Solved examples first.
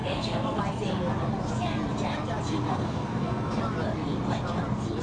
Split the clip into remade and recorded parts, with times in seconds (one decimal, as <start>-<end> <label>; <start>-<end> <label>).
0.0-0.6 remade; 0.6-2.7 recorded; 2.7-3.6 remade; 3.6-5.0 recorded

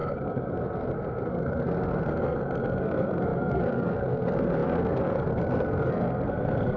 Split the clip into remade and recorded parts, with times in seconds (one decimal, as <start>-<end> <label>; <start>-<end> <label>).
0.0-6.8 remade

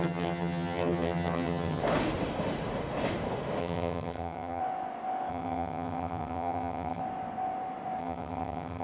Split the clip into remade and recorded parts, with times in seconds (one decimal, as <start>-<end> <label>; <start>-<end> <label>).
0.0-1.8 remade; 1.8-3.6 recorded; 3.6-4.6 remade; 4.6-5.3 recorded; 5.3-7.0 remade; 7.0-8.0 recorded; 8.0-8.8 remade